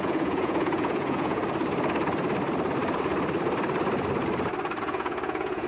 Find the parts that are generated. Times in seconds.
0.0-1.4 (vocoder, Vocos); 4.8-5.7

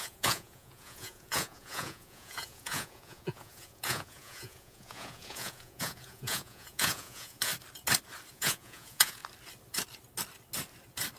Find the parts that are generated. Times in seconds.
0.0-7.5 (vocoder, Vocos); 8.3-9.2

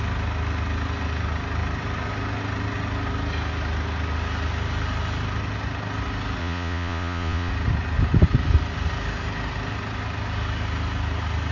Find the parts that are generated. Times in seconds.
6.4-7.5 (vocoder, Vocos)

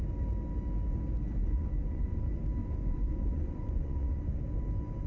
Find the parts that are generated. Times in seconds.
1.4-2.2 (vocoder, Vocos); 2.6-4.4

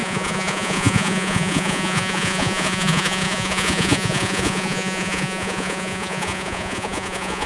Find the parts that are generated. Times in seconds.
0.0-7.5 (vocoder, Vocos)

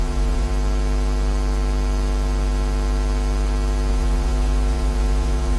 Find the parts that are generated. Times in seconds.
0.0-0.5 (vocoder, Vocos); 3.9-5.6

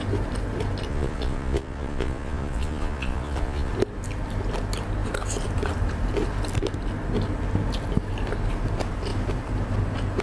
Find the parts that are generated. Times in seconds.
0.9-3.7 (vocoder, Vocos)

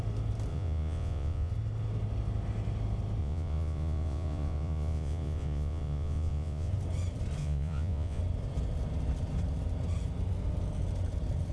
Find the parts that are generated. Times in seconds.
0.5-1.5 (vocoder, Vocos); 3.2-6.7; 7.4-8.2